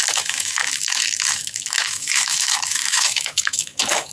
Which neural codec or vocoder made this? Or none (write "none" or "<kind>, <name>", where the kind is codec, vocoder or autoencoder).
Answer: autoencoder, DAC-VAE